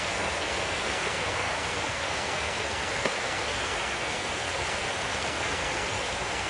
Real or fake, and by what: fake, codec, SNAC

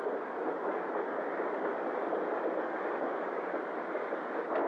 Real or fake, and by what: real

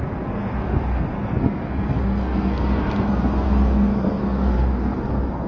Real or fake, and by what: fake, codec, SNAC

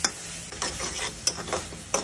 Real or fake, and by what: real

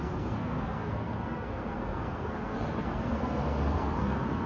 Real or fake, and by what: fake, codec, SNAC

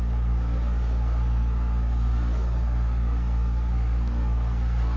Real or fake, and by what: fake, codec, SNAC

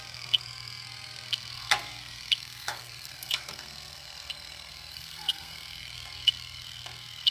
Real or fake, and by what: fake, codec, SNAC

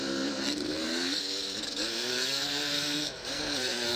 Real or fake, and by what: fake, codec, SNAC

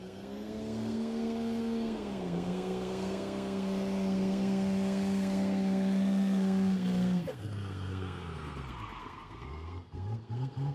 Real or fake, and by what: fake, codec, SNAC